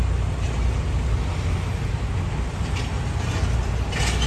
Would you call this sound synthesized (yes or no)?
no